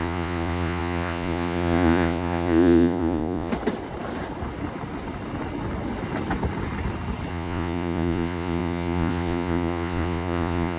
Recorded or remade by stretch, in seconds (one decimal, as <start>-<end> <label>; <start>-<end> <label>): 0.0-3.5 remade; 3.5-7.3 recorded; 7.3-10.8 remade